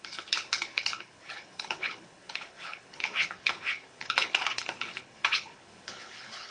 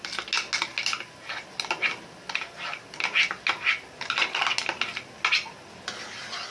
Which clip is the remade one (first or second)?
first